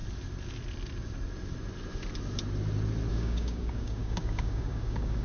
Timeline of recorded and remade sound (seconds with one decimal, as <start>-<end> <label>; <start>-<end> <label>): 0.0-3.1 recorded; 3.1-5.2 remade